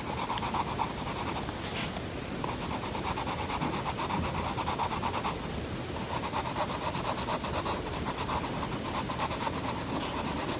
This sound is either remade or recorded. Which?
recorded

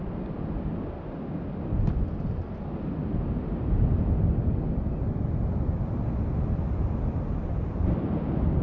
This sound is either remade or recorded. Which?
recorded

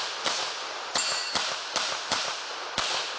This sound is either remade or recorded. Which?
recorded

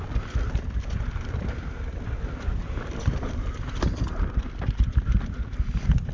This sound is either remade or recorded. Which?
recorded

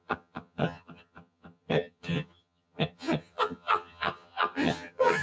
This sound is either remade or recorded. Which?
remade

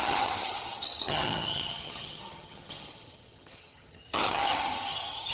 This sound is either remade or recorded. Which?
remade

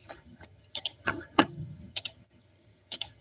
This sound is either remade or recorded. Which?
remade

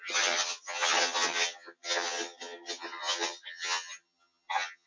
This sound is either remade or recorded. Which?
remade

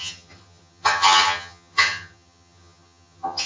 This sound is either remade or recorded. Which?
remade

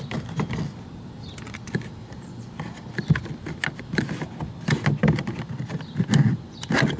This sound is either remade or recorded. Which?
recorded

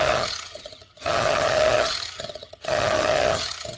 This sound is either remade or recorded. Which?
remade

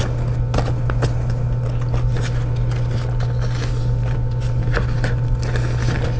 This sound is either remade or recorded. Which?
recorded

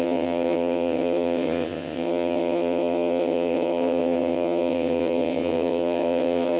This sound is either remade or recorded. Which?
remade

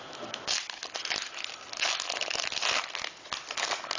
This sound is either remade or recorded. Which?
recorded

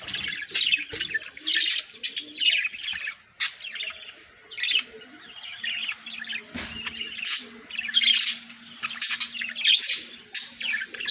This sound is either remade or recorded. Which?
recorded